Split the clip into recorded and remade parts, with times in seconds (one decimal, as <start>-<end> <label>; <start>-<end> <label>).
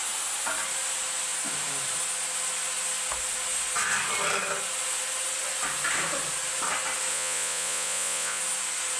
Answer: 0.0-7.1 recorded; 7.1-8.4 remade; 8.4-9.0 recorded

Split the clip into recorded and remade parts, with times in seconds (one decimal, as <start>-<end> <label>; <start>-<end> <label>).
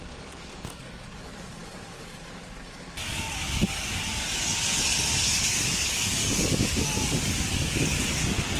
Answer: 0.0-8.6 remade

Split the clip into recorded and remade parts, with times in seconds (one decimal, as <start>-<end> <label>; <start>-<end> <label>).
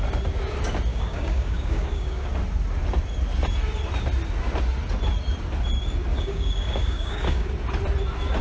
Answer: 0.0-0.9 recorded; 0.9-2.3 remade; 2.3-6.1 recorded; 6.1-7.5 remade; 7.5-8.4 recorded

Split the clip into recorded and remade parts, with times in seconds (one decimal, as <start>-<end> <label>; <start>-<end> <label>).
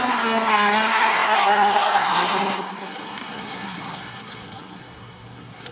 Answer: 0.0-5.7 remade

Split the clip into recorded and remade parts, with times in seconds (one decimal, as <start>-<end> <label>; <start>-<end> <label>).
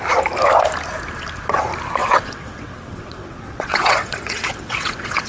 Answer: 0.0-2.0 recorded; 2.0-5.3 remade